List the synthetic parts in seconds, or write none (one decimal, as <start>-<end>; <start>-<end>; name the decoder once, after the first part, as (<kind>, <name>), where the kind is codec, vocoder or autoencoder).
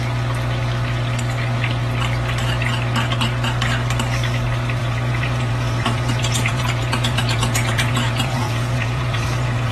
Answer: 4.8-9.7 (vocoder, Vocos)